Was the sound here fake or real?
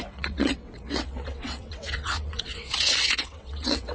fake